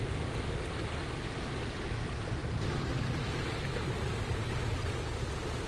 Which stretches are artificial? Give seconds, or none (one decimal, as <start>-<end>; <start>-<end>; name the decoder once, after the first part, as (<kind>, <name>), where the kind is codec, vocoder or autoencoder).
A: none